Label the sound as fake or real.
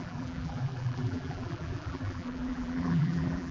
fake